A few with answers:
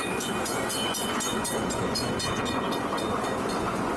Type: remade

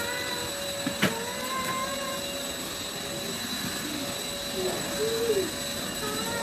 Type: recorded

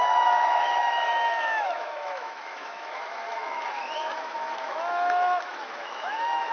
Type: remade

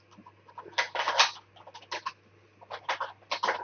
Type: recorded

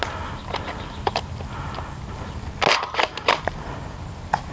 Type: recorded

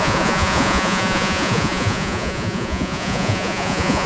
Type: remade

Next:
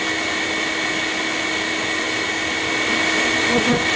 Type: recorded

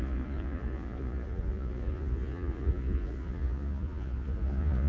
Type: remade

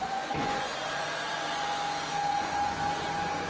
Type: remade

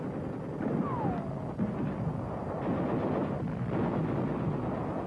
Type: recorded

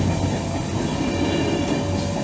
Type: recorded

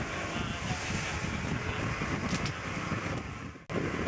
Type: recorded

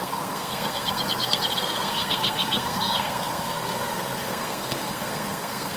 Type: remade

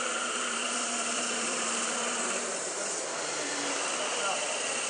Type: remade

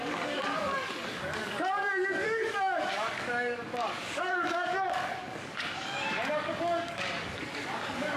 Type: remade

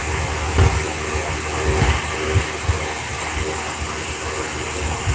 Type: recorded